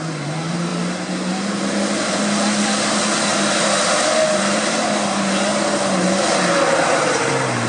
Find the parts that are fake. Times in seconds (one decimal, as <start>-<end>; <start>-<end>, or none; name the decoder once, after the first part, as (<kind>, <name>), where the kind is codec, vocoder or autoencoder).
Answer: 0.7-1.6 (vocoder, BigVGAN v2); 3.3-7.3